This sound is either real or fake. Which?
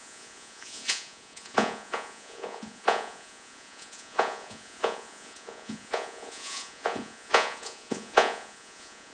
fake